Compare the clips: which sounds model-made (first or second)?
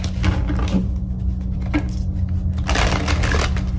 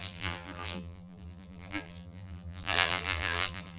second